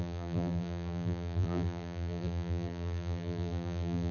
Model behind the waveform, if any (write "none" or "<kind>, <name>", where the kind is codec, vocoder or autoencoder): vocoder, BigVGAN v2